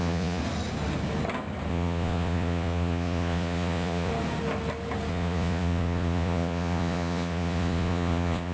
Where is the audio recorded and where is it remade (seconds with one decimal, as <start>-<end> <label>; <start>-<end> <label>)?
0.0-0.4 remade; 0.4-1.7 recorded; 1.7-4.1 remade; 4.1-5.1 recorded; 5.1-8.5 remade